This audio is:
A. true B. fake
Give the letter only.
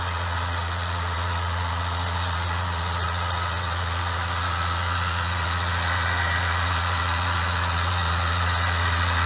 B